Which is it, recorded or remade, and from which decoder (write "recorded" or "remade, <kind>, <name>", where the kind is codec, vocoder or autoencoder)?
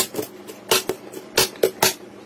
recorded